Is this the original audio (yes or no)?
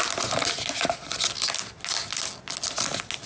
yes